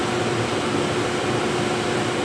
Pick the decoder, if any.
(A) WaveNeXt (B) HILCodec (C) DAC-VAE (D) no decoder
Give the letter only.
D